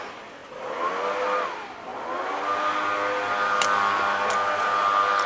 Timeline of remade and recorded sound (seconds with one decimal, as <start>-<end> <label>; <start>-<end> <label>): 0.0-5.3 recorded